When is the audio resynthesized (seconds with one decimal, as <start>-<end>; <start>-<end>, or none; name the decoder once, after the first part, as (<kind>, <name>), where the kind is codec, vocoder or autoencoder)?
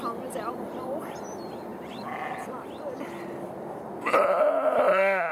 none